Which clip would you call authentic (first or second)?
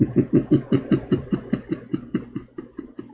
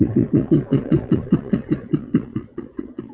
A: first